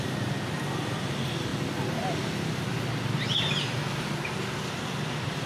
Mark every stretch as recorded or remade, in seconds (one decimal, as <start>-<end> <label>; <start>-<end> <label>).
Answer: 0.0-1.5 remade; 1.5-4.8 recorded; 4.8-5.5 remade